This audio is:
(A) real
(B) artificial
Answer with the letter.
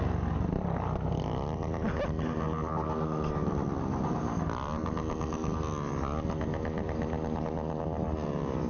A